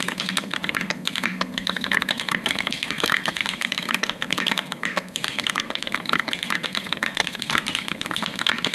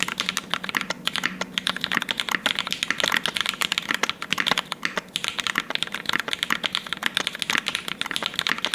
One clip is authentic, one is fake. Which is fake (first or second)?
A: first